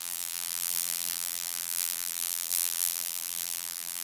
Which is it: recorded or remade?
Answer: remade